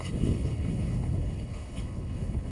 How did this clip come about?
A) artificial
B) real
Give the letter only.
A